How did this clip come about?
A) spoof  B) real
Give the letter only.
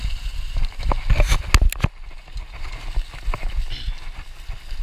B